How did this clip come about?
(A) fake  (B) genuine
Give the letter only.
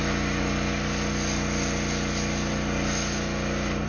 B